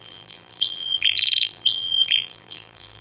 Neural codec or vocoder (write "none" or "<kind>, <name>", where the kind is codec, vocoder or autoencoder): vocoder, BigVGAN v2